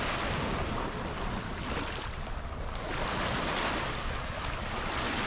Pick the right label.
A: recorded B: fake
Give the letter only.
A